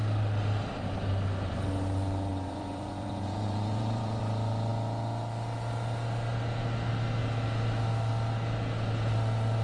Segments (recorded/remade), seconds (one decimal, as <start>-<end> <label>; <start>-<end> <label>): 0.0-2.3 recorded; 2.3-4.2 remade; 4.2-9.6 recorded